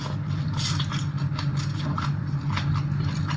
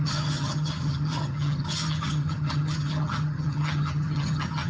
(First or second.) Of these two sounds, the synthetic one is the second